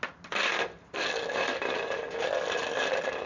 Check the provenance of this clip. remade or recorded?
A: recorded